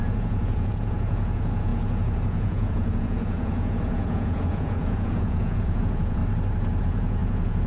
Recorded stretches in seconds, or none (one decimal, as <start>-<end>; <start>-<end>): 6.2-6.8